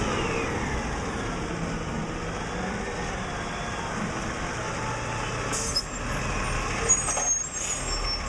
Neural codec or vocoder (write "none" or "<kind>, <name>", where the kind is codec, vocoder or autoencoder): none